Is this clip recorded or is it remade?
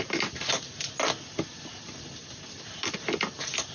recorded